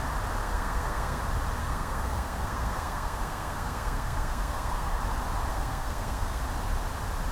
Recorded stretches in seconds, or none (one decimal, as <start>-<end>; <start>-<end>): 0.0-0.4; 1.2-1.6; 5.0-5.5; 6.4-7.3